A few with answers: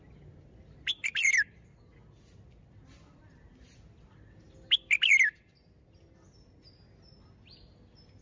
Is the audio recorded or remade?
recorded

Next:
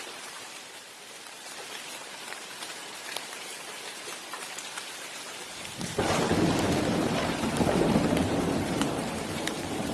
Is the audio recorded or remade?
remade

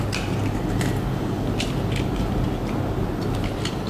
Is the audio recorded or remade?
recorded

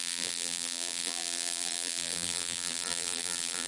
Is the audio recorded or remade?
remade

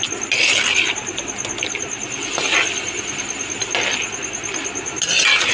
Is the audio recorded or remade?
recorded